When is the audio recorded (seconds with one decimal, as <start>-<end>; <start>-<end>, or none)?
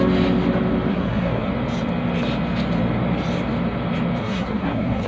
0.0-0.9; 1.5-4.2